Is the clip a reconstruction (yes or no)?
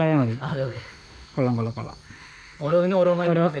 yes